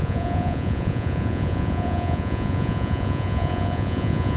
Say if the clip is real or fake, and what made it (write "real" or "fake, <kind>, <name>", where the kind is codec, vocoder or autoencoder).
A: fake, vocoder, Vocos